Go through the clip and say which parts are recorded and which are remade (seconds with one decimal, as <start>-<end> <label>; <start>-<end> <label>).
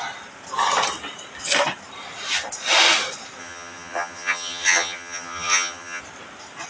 0.0-3.4 recorded; 3.4-6.0 remade; 6.0-6.7 recorded